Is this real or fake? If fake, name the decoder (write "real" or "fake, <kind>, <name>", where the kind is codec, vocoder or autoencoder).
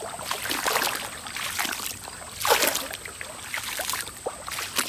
real